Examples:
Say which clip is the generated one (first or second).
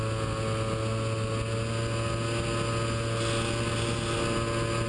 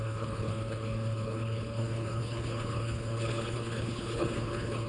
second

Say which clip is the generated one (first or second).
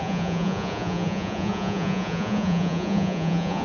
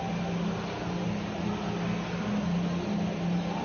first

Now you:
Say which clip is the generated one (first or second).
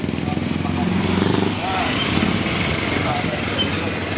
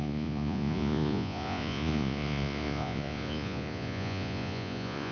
second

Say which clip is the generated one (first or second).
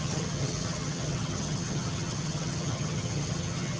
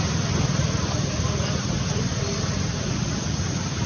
first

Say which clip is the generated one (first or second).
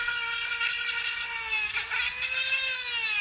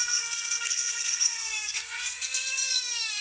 second